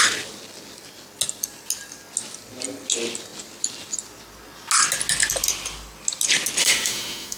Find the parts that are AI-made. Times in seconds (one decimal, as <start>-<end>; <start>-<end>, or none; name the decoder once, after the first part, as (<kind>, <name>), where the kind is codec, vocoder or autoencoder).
6.6-7.4 (autoencoder, DAC-VAE)